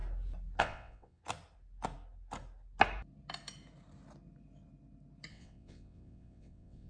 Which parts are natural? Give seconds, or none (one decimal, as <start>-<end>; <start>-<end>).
0.0-0.6; 1.2-5.3